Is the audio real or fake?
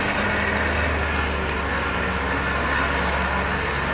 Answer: real